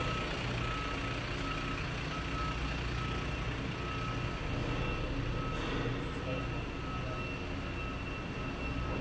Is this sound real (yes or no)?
yes